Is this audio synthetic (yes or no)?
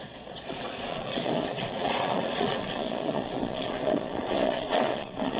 yes